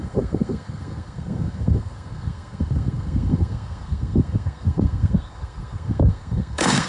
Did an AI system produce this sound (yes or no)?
yes